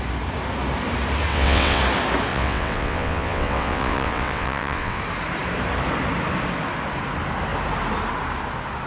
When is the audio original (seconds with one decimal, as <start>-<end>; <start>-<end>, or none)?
0.0-1.3; 1.8-2.3; 5.0-8.9